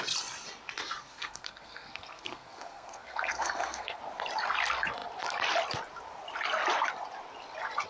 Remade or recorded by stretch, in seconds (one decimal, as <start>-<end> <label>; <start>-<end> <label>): 0.0-1.0 recorded; 1.0-4.0 remade; 4.0-7.9 recorded